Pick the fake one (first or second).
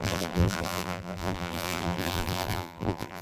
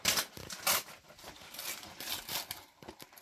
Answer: first